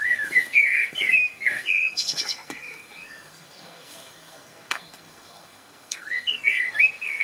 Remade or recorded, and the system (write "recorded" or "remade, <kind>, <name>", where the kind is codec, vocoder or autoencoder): remade, codec, SNAC